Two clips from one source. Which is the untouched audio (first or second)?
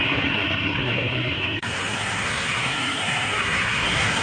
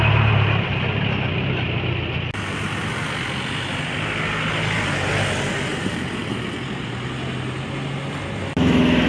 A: second